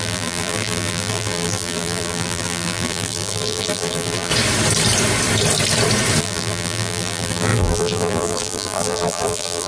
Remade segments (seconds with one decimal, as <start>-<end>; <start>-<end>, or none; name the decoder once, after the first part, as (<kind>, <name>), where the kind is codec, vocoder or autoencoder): 0.0-4.3 (vocoder, BigVGAN v2); 6.2-9.7